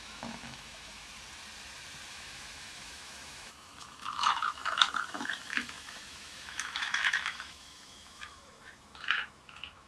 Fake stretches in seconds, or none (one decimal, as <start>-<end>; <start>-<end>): 0.0-1.1; 2.1-9.9